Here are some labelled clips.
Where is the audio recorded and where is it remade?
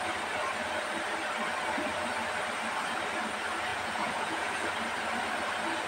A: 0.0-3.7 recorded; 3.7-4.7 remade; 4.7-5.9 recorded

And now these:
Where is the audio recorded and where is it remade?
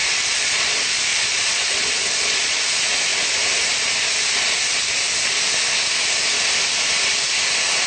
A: 0.0-0.7 remade; 0.7-1.1 recorded; 1.1-2.6 remade; 2.6-7.9 recorded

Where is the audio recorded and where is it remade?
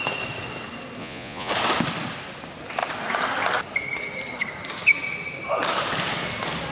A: 0.0-1.0 recorded; 1.0-1.5 remade; 1.5-6.7 recorded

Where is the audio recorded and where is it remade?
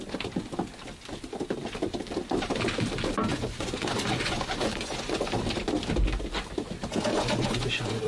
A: 0.0-3.3 recorded; 3.3-5.4 remade; 5.4-7.1 recorded; 7.1-8.1 remade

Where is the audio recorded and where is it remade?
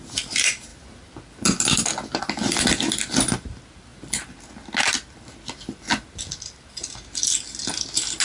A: 0.0-8.2 recorded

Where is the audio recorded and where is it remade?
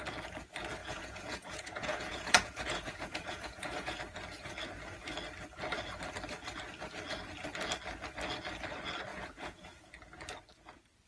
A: 0.0-0.8 recorded; 0.8-4.0 remade; 4.0-9.1 recorded; 9.1-9.9 remade; 9.9-11.1 recorded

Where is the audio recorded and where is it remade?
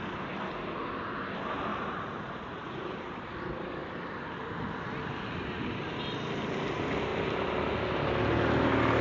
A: 0.0-1.7 recorded; 1.7-2.9 remade; 2.9-9.0 recorded